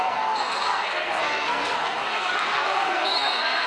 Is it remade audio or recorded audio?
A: remade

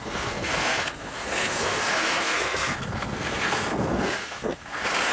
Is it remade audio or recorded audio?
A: remade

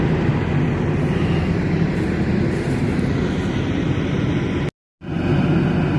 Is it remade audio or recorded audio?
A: recorded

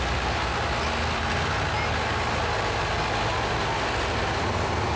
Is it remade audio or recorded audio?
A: recorded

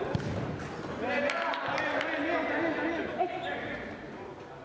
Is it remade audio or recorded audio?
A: recorded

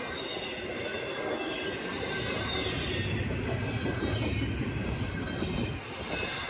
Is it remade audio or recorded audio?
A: recorded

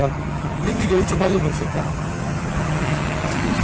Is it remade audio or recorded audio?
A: remade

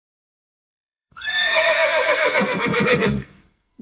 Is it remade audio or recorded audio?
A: remade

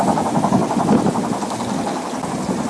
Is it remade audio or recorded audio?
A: recorded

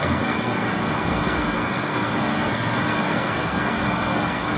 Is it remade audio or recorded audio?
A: remade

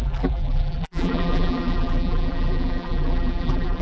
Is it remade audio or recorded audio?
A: remade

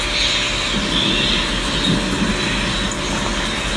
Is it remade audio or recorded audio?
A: recorded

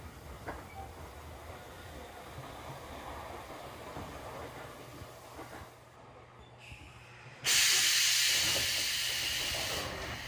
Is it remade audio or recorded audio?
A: recorded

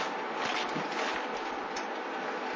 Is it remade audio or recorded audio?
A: recorded